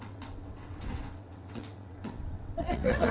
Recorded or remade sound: remade